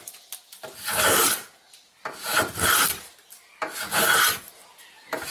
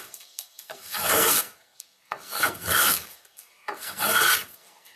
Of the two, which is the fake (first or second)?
second